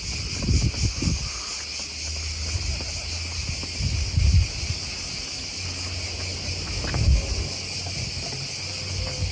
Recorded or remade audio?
recorded